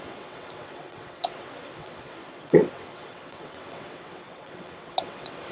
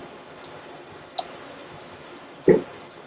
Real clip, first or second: second